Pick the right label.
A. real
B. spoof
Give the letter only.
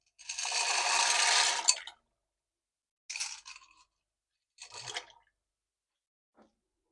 A